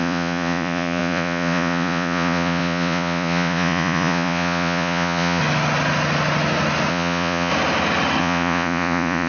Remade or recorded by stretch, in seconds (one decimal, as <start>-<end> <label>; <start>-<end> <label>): 0.0-5.4 remade; 5.4-6.9 recorded; 6.9-7.5 remade; 7.5-8.2 recorded; 8.2-9.3 remade